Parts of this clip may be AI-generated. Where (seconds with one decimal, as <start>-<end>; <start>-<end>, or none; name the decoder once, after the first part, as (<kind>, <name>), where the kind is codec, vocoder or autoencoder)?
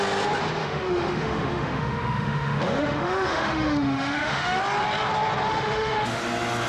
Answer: 0.6-4.6 (autoencoder, DAC-VAE); 5.5-6.2